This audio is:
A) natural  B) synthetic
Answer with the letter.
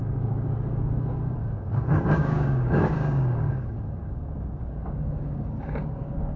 B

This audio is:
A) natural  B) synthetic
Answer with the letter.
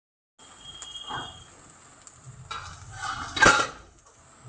A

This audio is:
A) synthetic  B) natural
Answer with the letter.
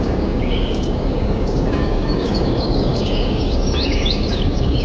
A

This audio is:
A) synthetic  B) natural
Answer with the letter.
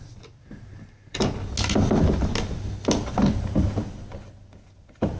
B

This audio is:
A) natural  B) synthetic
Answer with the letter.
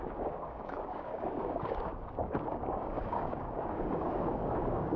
B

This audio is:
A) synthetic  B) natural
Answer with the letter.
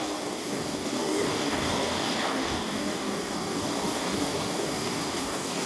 A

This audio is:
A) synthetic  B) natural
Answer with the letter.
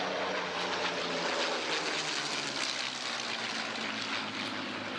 B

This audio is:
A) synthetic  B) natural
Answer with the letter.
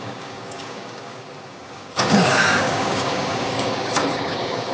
A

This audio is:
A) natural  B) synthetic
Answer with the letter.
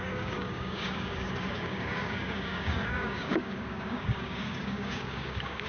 B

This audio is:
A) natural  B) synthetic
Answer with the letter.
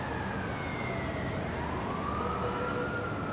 A